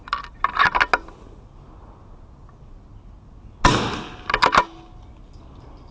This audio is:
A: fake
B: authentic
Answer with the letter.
B